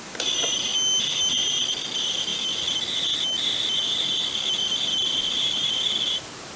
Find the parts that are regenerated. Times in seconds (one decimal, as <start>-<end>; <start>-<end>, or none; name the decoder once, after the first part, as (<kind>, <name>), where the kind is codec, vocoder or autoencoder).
none